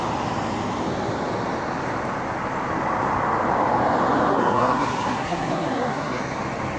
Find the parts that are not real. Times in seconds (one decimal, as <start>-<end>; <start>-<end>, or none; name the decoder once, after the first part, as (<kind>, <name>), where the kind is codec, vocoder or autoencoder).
4.3-6.2 (codec, SNAC)